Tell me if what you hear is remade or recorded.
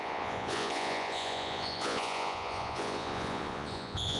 remade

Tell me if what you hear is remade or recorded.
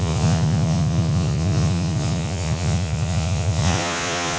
remade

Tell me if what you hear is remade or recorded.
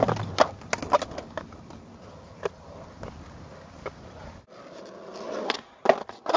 recorded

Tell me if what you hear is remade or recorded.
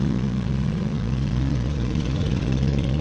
remade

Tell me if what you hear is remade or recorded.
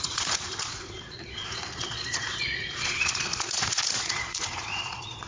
remade